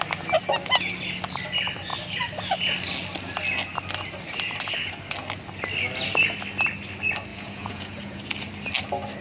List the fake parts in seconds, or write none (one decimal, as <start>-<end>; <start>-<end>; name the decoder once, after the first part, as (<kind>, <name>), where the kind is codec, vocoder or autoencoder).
7.3-8.2 (vocoder, Vocos)